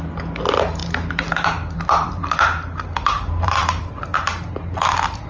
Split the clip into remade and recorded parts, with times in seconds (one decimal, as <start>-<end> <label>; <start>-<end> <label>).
0.0-0.8 recorded; 0.8-3.9 remade; 3.9-5.3 recorded